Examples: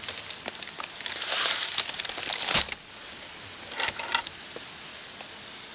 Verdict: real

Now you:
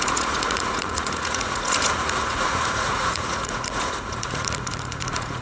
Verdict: fake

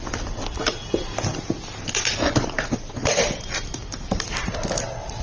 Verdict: real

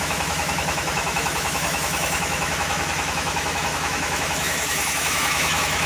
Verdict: fake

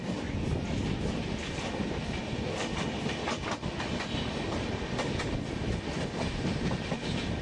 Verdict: real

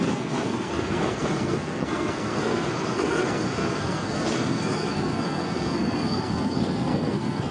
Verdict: fake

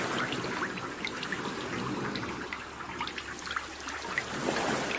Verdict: real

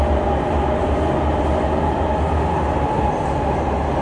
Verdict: real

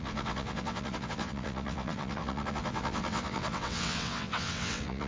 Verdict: fake